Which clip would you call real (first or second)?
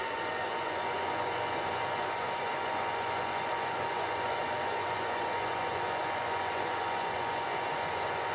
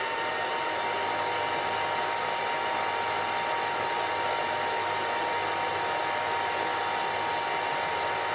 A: second